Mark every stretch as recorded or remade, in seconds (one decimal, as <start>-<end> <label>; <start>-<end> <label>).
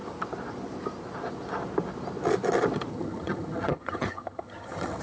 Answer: 0.0-2.9 recorded; 2.9-5.0 remade